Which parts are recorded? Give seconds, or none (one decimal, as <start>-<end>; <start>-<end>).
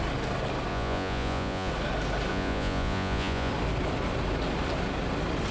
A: 0.0-0.7; 1.7-2.3; 3.5-5.5